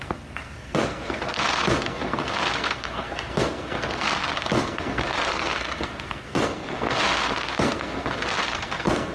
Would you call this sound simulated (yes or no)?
yes